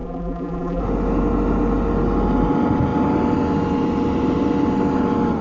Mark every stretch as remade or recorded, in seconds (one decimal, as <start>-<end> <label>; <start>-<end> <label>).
0.0-0.8 remade; 0.8-5.4 recorded